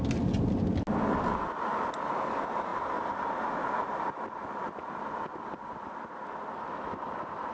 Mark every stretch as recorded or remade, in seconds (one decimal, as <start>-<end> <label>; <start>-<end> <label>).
0.0-7.5 recorded